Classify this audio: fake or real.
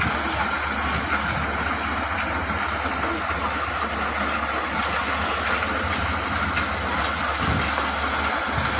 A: real